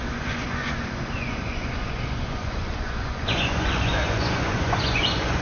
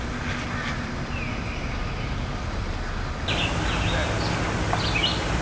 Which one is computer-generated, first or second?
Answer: first